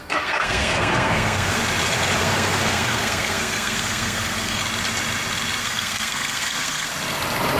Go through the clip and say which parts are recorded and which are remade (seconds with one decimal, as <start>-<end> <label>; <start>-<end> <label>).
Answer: 0.0-1.6 remade; 1.6-2.2 recorded; 2.2-4.6 remade; 4.6-5.6 recorded; 5.6-6.9 remade; 6.9-7.6 recorded

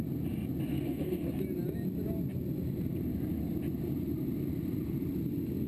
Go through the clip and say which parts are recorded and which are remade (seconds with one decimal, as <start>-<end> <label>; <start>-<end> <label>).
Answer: 0.0-0.7 recorded; 0.7-1.3 remade; 1.3-5.7 recorded

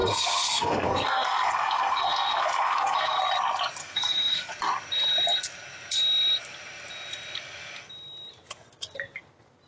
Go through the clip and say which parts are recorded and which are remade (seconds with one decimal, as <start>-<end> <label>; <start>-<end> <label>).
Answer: 0.0-3.2 remade; 3.2-3.8 recorded; 3.8-4.5 remade; 4.5-9.7 recorded

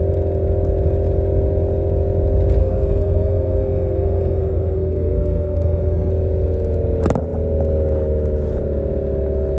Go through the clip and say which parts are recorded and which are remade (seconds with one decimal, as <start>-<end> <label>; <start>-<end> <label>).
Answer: 0.0-2.6 recorded; 2.6-6.1 remade; 6.1-9.6 recorded

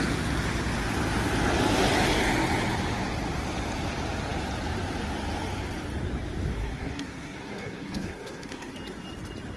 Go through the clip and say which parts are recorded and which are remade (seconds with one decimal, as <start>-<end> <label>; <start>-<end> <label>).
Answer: 0.0-6.6 recorded; 6.6-8.7 remade; 8.7-9.6 recorded